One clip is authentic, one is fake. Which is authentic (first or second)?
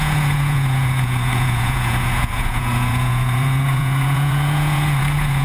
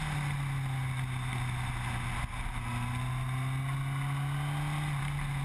second